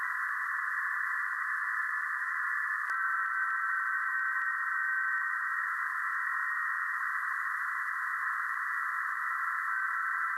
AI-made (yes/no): no